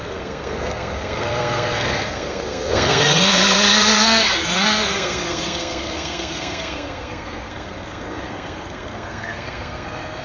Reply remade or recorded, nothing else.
remade